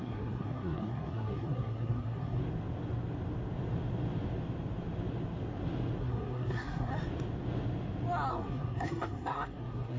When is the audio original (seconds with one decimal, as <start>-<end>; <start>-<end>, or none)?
2.4-6.0; 6.9-8.3